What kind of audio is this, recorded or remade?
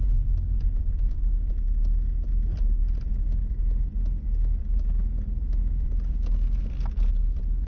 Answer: recorded